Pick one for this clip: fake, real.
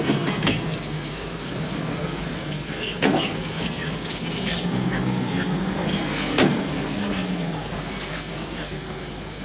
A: fake